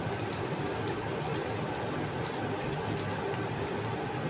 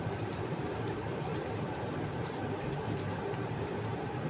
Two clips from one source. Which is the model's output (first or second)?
second